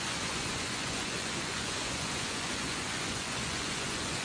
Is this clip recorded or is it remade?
remade